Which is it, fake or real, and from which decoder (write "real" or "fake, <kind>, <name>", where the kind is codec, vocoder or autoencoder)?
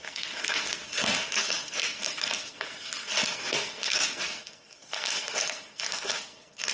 fake, codec, SNAC